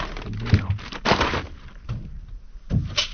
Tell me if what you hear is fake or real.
fake